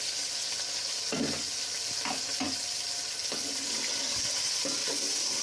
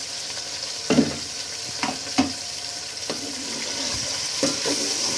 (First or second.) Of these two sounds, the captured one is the first